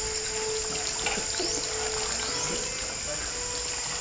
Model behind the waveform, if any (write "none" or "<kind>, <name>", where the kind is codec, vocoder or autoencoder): none